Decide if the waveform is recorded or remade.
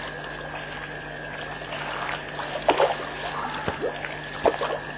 recorded